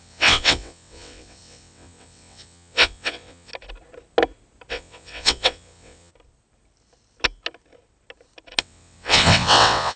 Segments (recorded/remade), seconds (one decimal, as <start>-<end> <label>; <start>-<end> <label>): 0.0-3.5 remade; 3.5-4.7 recorded; 4.7-6.1 remade; 6.1-8.6 recorded; 8.6-10.0 remade